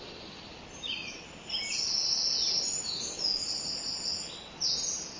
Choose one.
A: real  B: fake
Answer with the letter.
A